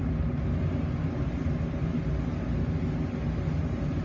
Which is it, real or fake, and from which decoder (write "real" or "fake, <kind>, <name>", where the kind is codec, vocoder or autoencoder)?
real